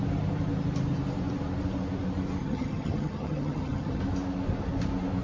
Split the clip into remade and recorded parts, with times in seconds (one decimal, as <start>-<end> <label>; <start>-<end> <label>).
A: 0.0-2.4 recorded; 2.4-4.0 remade; 4.0-5.2 recorded